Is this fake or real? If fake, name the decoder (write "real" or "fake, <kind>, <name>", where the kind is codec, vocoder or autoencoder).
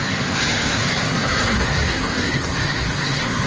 fake, codec, SNAC